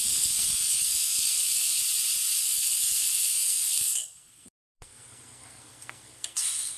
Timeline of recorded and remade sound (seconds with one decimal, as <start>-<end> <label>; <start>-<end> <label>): 0.0-1.8 remade; 1.8-2.4 recorded; 2.4-6.8 remade